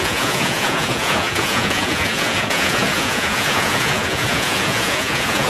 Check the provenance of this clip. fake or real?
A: fake